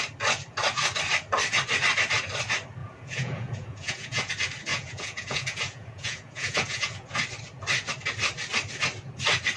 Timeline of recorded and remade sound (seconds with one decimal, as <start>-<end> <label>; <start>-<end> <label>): 0.0-2.8 recorded; 2.8-4.3 remade; 4.3-4.7 recorded; 4.7-7.2 remade; 7.2-9.6 recorded